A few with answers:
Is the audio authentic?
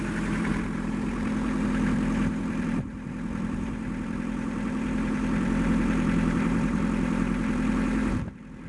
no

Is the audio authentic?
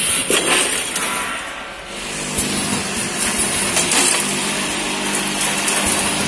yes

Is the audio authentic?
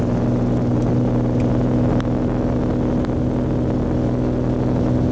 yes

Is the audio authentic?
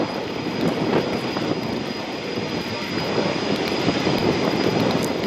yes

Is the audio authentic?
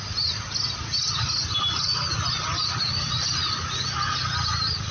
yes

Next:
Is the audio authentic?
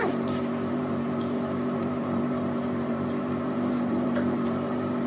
no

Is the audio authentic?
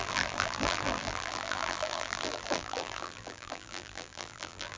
no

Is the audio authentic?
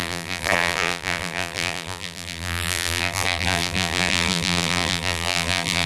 no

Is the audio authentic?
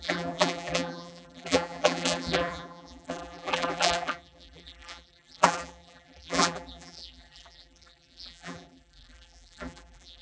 no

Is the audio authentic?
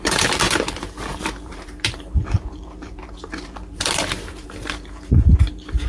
no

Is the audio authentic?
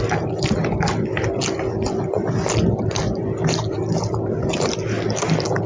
yes